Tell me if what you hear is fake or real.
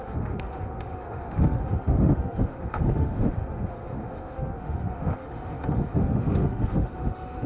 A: fake